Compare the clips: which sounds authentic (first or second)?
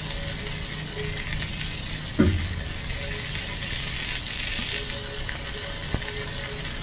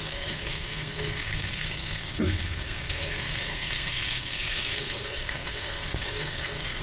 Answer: first